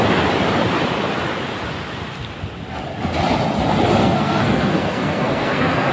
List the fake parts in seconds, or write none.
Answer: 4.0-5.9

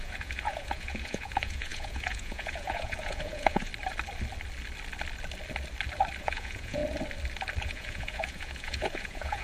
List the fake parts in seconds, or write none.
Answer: 0.0-3.7; 6.2-6.8; 7.6-9.4

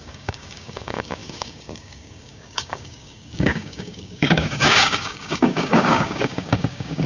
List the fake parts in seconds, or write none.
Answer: 0.0-7.1

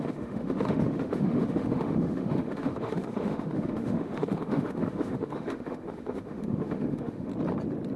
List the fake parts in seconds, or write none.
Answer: 0.0-7.3

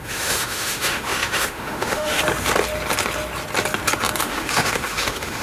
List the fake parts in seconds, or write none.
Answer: 0.0-2.2; 4.2-5.4